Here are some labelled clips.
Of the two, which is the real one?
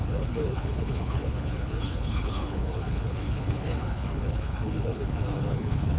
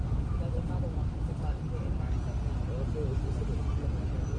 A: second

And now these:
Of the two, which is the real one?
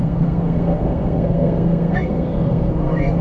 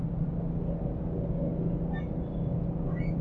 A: second